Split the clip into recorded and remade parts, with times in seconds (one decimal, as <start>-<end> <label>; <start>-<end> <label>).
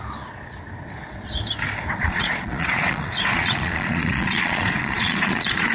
0.0-2.0 recorded; 2.0-5.7 remade